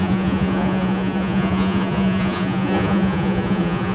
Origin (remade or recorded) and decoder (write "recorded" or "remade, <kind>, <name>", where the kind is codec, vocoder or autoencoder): remade, vocoder, Vocos